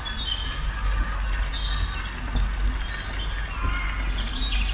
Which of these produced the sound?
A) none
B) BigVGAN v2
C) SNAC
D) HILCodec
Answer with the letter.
A